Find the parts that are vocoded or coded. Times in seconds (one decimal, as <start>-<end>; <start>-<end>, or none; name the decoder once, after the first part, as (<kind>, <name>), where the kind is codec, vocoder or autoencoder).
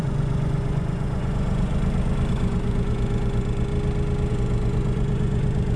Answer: 0.0-1.7 (vocoder, Vocos); 2.3-3.7; 4.3-5.8